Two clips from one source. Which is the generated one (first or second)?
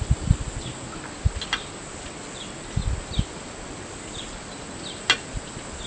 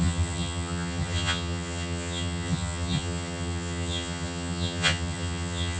second